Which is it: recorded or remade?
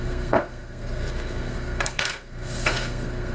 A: remade